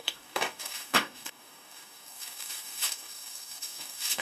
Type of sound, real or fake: fake